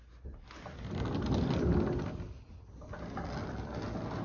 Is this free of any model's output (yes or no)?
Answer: yes